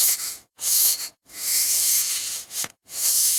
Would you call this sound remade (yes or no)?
yes